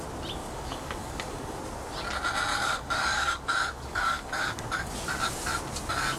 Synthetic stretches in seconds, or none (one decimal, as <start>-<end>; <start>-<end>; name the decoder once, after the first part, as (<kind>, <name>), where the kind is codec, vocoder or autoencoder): 0.4-1.6 (codec, DAC); 2.5-4.9